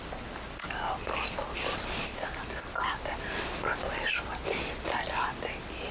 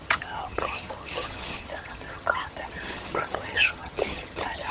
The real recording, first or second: first